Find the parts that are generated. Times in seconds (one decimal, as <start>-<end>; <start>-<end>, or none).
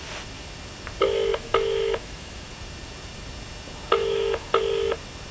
1.3-2.5; 4.0-4.6